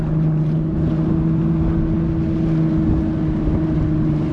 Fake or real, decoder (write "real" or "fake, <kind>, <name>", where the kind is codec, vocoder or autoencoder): real